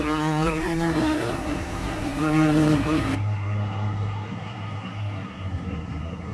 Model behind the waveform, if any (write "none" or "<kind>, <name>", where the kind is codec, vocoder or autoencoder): codec, SNAC